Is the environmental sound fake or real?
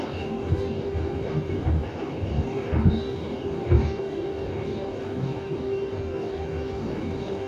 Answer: fake